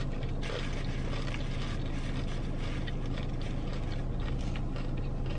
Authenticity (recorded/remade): recorded